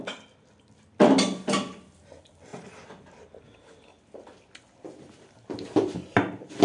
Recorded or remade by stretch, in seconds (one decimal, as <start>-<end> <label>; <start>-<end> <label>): 0.0-6.6 recorded